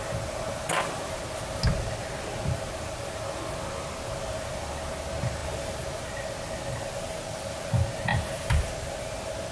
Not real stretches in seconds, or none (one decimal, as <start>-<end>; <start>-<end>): 8.1-8.7